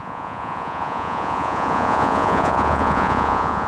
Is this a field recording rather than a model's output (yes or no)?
no